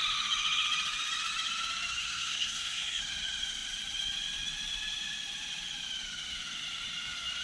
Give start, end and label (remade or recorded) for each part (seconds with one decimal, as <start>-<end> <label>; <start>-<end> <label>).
0.0-2.0 recorded; 2.0-3.0 remade; 3.0-7.4 recorded